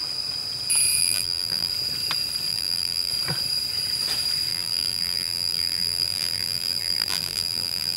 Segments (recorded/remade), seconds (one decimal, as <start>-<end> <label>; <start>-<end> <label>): 0.0-1.0 recorded; 1.0-1.7 remade; 1.7-2.5 recorded; 2.5-3.1 remade; 3.1-4.5 recorded; 4.5-8.0 remade